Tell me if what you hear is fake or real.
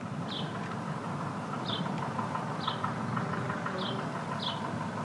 real